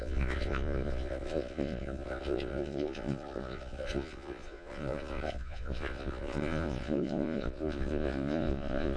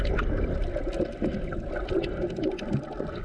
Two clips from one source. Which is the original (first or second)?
second